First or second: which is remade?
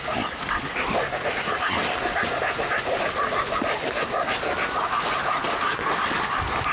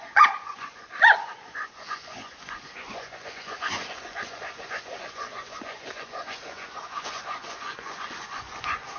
second